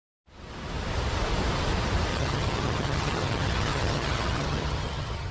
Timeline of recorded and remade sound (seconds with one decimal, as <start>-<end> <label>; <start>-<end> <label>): 0.0-2.1 recorded; 2.1-5.3 remade